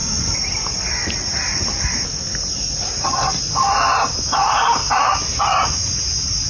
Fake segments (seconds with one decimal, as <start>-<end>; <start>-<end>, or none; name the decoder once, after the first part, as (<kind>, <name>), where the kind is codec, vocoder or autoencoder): none